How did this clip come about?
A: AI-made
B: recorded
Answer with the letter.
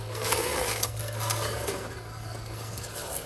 A